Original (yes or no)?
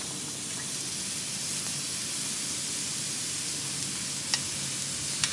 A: yes